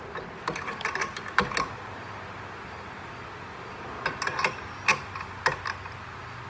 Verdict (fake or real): real